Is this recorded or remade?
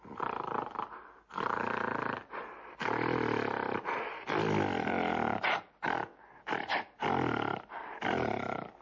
recorded